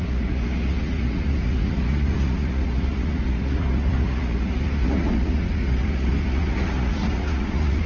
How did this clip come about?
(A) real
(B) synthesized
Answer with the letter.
B